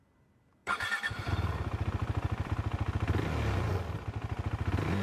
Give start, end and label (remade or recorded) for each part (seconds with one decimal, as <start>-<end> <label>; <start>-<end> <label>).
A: 0.0-0.6 recorded; 0.6-1.3 remade; 1.3-5.0 recorded